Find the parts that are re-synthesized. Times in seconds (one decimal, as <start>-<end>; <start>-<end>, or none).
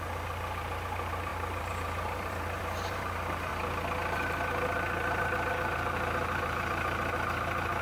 0.0-3.5; 5.5-7.8